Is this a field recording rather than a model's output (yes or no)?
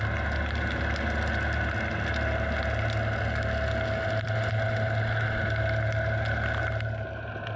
yes